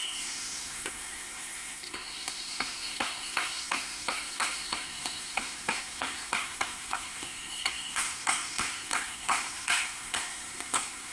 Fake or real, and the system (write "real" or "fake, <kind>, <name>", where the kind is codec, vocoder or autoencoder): fake, codec, SNAC